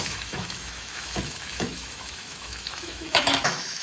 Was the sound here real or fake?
fake